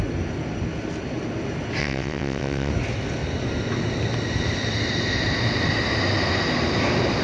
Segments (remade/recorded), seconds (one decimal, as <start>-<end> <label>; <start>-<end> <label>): 0.0-1.8 recorded; 1.8-2.7 remade; 2.7-7.2 recorded